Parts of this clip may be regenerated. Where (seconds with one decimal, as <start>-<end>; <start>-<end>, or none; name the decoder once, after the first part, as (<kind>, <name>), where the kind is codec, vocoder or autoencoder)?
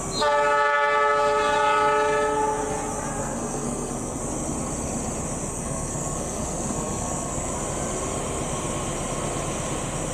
3.2-4.2 (codec, SNAC); 5.5-7.5